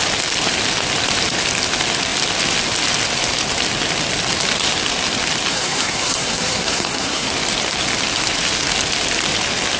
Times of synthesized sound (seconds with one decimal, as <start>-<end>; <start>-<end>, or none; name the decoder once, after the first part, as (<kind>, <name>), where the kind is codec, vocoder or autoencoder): 5.5-7.3 (codec, SNAC)